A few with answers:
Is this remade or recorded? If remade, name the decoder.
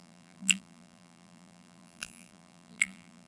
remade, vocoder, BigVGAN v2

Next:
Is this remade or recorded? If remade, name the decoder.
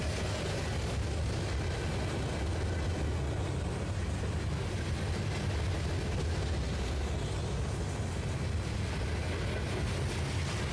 recorded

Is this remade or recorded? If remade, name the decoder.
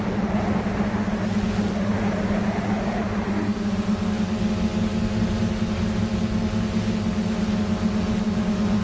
recorded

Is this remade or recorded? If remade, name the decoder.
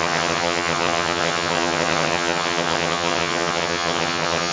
remade, vocoder, HiFi-GAN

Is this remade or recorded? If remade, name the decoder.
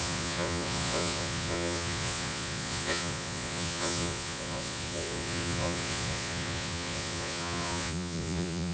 remade, vocoder, Vocos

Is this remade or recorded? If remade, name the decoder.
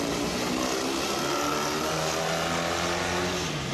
recorded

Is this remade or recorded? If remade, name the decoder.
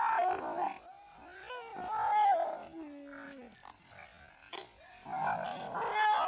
recorded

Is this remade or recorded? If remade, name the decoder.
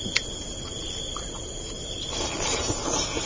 recorded